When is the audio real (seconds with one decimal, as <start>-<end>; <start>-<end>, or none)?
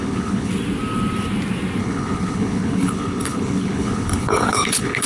0.5-1.8